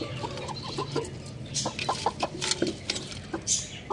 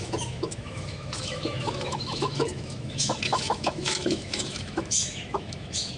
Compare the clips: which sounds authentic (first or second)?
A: first